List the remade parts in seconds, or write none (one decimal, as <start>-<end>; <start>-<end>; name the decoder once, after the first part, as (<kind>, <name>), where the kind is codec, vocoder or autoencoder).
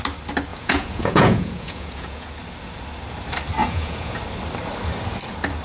0.5-2.3 (vocoder, Vocos); 3.6-4.2